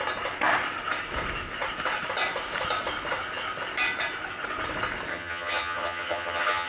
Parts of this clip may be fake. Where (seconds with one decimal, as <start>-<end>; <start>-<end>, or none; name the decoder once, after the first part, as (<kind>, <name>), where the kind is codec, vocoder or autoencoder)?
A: 5.1-6.7 (vocoder, HiFi-GAN)